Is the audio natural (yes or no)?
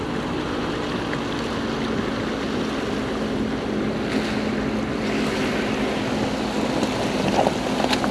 yes